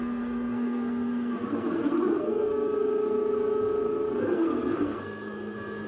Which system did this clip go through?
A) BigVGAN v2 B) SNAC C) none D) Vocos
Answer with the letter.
B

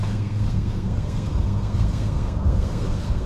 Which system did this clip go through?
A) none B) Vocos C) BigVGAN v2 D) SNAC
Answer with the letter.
D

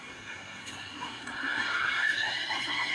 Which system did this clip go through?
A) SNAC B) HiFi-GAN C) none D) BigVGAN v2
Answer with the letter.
A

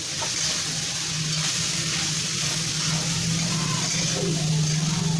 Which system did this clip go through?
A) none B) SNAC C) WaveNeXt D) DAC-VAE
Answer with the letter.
A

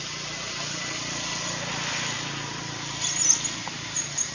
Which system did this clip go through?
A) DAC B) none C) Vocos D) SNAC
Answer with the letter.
B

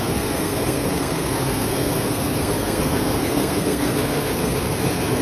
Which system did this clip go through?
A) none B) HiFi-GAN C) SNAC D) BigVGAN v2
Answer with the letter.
C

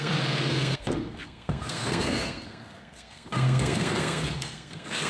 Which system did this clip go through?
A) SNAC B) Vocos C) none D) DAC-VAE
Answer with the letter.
A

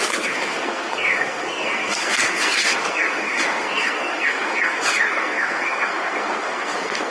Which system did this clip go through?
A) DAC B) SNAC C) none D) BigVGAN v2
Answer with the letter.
B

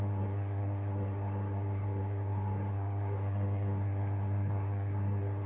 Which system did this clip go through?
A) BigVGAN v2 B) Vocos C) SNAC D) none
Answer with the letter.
C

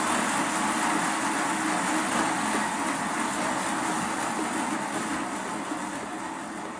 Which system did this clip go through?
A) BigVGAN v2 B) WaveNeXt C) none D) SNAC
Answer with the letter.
C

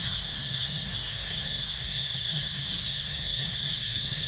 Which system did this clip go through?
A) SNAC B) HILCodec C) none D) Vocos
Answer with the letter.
A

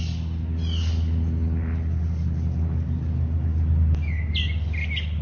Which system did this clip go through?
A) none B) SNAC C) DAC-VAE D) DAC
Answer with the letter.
A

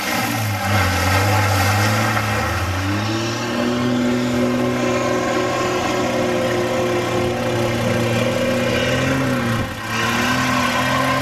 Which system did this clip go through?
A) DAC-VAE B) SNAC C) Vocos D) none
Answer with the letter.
D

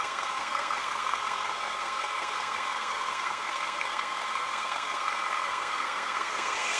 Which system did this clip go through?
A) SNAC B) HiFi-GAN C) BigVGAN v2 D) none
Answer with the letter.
A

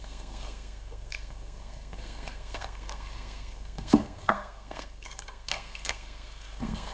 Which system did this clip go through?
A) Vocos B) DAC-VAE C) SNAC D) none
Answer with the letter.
C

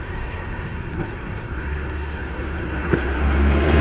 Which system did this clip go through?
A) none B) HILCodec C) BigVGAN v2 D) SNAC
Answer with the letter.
D